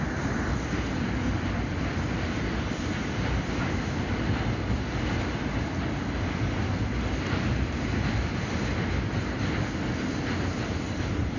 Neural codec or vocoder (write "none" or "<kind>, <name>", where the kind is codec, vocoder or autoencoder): none